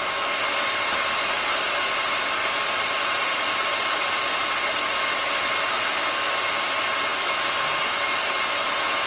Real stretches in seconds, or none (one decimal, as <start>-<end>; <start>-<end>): 0.0-9.1